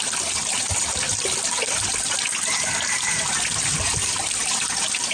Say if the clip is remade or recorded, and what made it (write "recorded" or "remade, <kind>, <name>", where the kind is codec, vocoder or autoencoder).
recorded